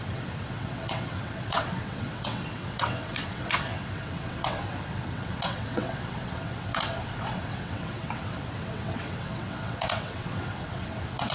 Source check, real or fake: fake